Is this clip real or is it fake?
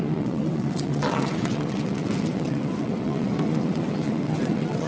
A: fake